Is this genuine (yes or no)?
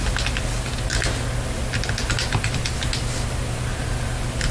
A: yes